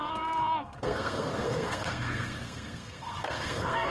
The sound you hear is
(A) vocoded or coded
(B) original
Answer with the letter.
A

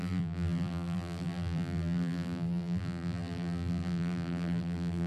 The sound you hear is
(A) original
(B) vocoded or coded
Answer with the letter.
B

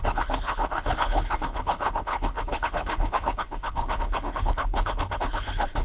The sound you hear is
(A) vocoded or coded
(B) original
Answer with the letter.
A